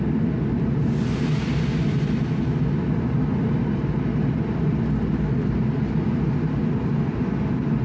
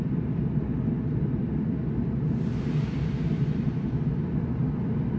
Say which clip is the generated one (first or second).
second